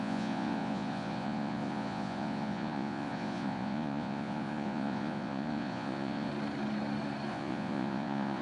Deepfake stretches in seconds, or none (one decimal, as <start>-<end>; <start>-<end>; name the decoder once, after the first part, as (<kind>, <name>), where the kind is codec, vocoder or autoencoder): 0.0-6.3 (vocoder, Vocos); 7.3-8.4